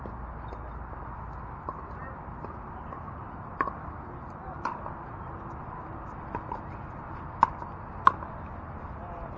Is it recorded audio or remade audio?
recorded